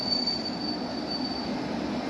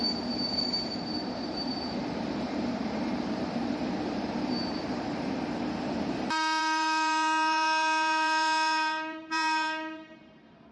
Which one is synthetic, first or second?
second